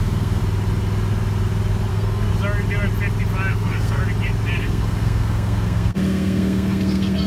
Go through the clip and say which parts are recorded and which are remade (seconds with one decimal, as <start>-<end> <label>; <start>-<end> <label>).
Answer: 0.0-0.4 remade; 0.4-1.9 recorded; 1.9-2.3 remade; 2.3-3.5 recorded; 3.5-4.0 remade; 4.0-4.6 recorded; 4.6-7.3 remade